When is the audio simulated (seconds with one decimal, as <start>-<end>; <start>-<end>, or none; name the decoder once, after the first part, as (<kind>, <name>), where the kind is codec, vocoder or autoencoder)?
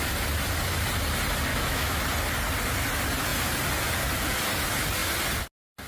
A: 1.5-2.0 (autoencoder, DAC-VAE)